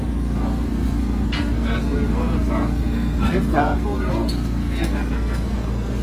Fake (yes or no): yes